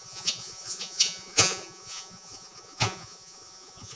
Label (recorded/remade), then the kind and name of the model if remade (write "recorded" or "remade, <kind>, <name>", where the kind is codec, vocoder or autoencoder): remade, vocoder, Vocos